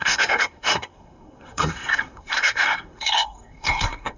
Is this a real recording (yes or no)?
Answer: no